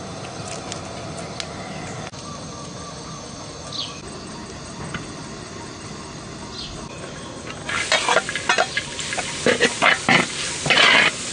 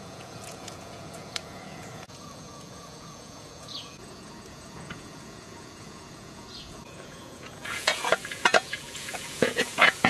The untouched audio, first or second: first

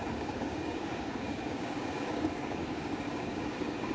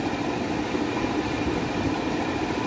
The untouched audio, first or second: second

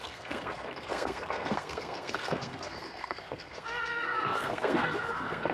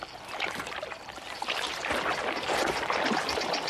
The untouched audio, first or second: second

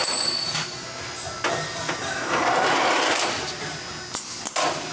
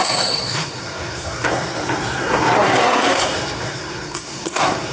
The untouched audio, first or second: first